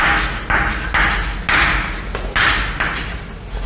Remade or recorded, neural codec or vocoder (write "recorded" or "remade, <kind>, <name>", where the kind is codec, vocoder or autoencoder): recorded